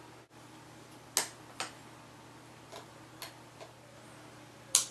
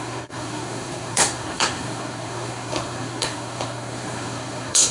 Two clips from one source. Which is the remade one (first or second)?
second